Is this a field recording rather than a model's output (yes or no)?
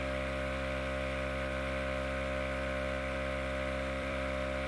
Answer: no